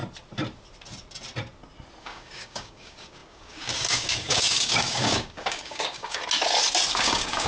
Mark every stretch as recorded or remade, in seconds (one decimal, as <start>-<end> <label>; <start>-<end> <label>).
0.0-2.0 recorded; 2.0-6.2 remade; 6.2-6.9 recorded; 6.9-7.5 remade